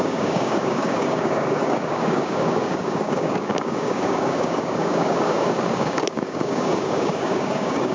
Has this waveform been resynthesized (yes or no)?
yes